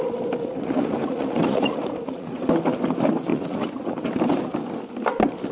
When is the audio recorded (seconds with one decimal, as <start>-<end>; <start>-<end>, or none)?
0.0-0.4; 2.5-3.3; 4.1-5.5